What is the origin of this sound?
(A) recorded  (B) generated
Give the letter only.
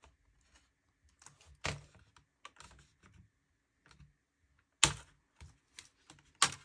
A